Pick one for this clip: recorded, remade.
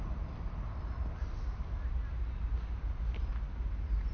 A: recorded